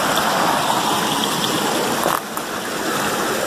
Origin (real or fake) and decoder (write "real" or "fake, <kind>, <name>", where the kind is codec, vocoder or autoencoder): real